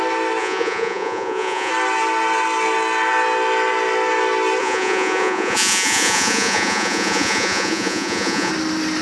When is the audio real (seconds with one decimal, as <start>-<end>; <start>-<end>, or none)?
0.0-0.4; 1.7-4.6; 8.5-9.0